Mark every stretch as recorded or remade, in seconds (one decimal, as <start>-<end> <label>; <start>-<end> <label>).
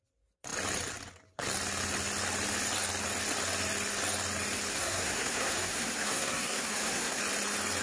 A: 0.0-4.7 recorded; 4.7-7.2 remade; 7.2-7.8 recorded